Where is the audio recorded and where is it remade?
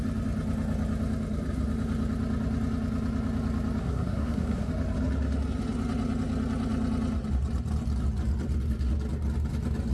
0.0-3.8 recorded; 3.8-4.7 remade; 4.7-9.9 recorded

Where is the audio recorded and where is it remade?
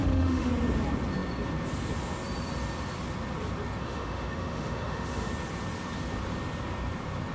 0.0-0.5 remade; 0.5-3.8 recorded; 3.8-5.3 remade; 5.3-7.3 recorded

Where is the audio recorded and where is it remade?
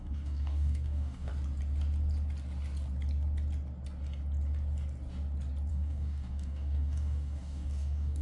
0.0-1.3 remade; 1.3-5.7 recorded; 5.7-8.2 remade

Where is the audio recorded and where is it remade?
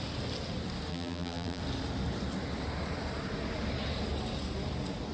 0.0-0.9 recorded; 0.9-1.6 remade; 1.6-5.1 recorded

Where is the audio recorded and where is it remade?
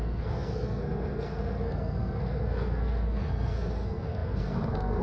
0.0-5.0 remade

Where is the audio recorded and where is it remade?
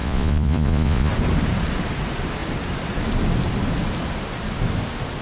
0.0-1.1 remade; 1.1-5.2 recorded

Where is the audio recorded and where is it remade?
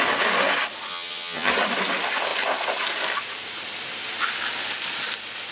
0.0-0.9 recorded; 0.9-1.5 remade; 1.5-5.5 recorded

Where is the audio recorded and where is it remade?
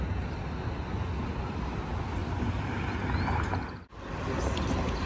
0.0-2.2 recorded; 2.2-3.9 remade; 3.9-5.1 recorded